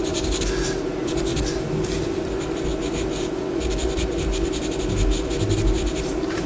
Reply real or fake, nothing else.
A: real